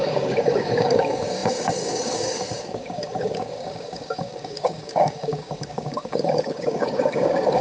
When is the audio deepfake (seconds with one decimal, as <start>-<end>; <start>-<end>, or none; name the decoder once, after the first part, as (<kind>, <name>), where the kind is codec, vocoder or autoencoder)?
0.0-7.6 (codec, DAC)